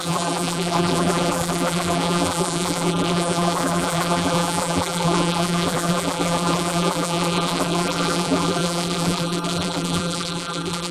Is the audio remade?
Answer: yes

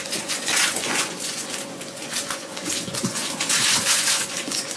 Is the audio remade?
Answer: yes